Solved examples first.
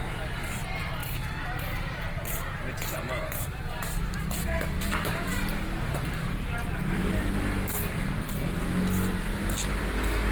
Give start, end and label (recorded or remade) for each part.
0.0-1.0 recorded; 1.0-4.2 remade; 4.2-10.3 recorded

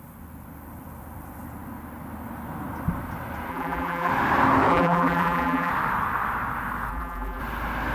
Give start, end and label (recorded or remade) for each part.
0.0-3.5 recorded; 3.5-4.1 remade; 4.1-4.7 recorded; 4.7-5.7 remade; 5.7-6.9 recorded; 6.9-7.4 remade; 7.4-7.9 recorded